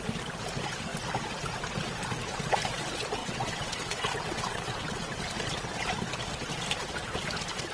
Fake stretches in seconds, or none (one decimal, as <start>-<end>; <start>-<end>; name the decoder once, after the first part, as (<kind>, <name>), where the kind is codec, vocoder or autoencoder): 3.2-5.2 (vocoder, WaveNeXt)

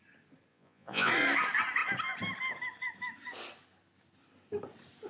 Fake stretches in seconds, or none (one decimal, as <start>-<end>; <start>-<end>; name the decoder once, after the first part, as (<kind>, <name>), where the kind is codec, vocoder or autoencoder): 0.5-1.1 (vocoder, Vocos)

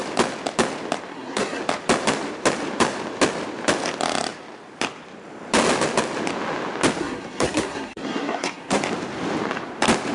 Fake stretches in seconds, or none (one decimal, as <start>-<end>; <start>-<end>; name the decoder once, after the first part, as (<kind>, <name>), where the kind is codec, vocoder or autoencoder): 1.1-1.6 (codec, SNAC); 7.0-8.8

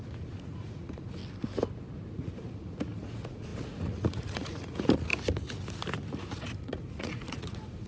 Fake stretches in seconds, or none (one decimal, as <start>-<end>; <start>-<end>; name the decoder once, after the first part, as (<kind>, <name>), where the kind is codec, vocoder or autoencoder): 0.0-1.2 (vocoder, Vocos); 2.1-5.1; 6.6-7.9

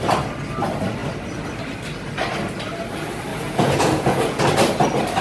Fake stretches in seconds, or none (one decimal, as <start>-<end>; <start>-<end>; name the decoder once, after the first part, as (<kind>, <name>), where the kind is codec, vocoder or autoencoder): 3.3-4.4 (vocoder, Vocos)